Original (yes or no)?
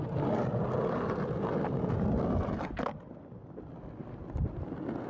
yes